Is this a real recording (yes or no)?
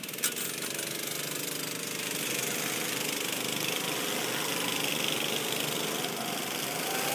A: yes